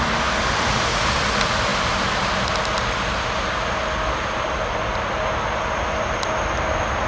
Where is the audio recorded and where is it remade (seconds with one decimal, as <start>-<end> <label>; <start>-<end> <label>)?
0.0-7.1 recorded